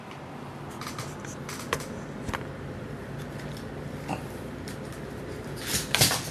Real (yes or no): no